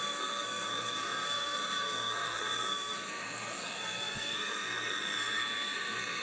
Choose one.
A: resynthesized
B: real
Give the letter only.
A